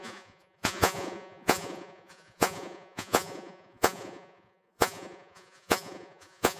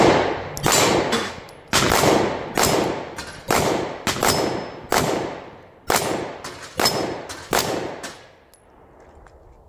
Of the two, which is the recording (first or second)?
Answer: second